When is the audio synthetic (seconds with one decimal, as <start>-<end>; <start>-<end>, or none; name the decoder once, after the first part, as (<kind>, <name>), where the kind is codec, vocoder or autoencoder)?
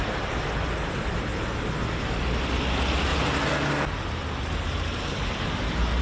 3.1-6.0 (vocoder, BigVGAN v2)